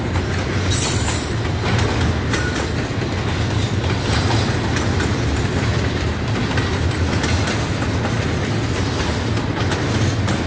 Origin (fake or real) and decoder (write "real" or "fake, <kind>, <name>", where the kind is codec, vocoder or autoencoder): real